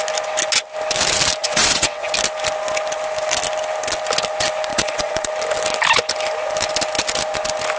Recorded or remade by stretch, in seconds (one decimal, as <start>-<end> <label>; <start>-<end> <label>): 0.0-1.4 recorded; 1.4-2.1 remade; 2.1-4.7 recorded; 4.7-5.3 remade; 5.3-7.8 recorded

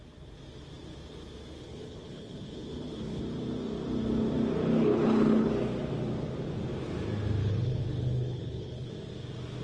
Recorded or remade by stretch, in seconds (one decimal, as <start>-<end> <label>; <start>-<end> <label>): 0.0-1.6 recorded; 1.6-3.2 remade; 3.2-4.6 recorded; 4.6-5.5 remade; 5.5-7.4 recorded; 7.4-8.9 remade; 8.9-9.6 recorded

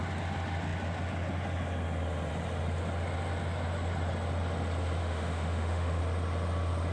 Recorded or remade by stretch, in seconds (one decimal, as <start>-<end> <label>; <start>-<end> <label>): 0.0-5.0 recorded; 5.0-6.0 remade; 6.0-6.9 recorded

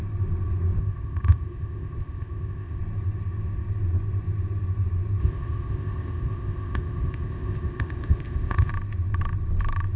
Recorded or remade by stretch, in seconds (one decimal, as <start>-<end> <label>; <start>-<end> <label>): 0.0-0.8 recorded; 0.8-2.8 remade; 2.8-5.2 recorded; 5.2-8.7 remade; 8.7-10.0 recorded

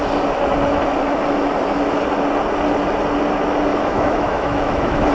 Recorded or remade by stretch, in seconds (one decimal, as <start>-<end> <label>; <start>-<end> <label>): 0.0-3.7 recorded; 3.7-5.1 remade

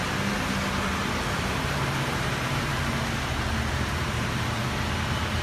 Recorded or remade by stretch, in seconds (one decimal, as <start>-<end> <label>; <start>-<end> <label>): 0.0-1.0 recorded; 1.0-2.9 remade; 2.9-5.4 recorded

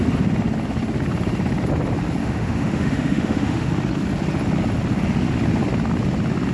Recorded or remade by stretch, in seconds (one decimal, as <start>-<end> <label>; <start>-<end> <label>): 0.0-2.2 recorded; 2.2-3.7 remade; 3.7-6.5 recorded